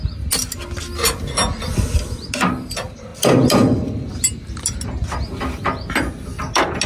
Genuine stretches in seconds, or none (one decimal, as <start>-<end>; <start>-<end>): 0.0-6.9